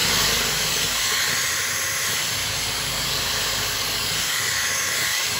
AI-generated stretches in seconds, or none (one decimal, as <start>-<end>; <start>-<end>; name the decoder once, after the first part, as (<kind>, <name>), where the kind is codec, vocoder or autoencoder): 0.0-1.3 (codec, DAC); 2.4-5.4